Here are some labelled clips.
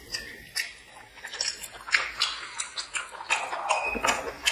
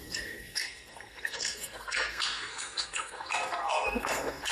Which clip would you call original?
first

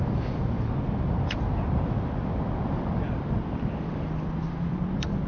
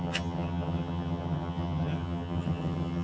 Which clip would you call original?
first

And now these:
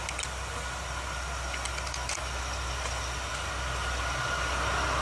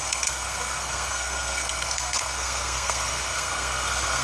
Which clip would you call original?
first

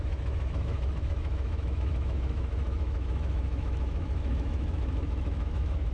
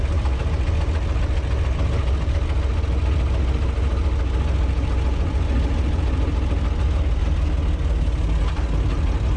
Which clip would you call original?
second